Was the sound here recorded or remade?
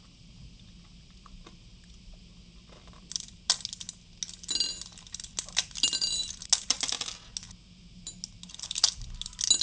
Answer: recorded